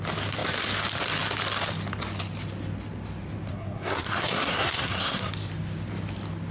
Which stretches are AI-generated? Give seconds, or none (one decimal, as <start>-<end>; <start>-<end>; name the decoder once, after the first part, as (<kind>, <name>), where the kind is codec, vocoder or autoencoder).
3.5-5.3 (codec, SNAC)